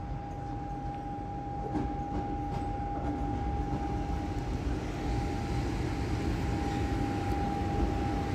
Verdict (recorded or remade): recorded